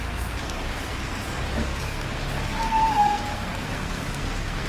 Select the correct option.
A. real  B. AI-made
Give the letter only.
B